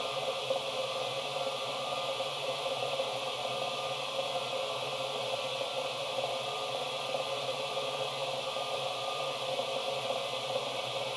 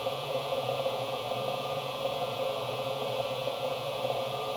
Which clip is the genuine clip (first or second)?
first